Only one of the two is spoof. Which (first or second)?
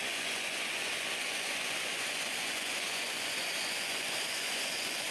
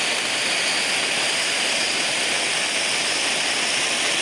first